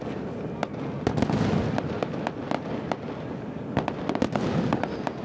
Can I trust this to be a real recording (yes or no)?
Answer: yes